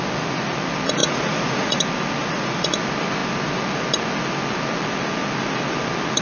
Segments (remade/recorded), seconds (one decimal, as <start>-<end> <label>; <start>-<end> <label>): 0.0-1.0 recorded; 1.0-1.8 remade; 1.8-2.2 recorded; 2.2-2.7 remade; 2.7-6.2 recorded